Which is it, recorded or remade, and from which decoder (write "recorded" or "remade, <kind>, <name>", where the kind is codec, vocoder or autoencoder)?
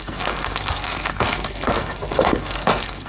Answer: remade, codec, SNAC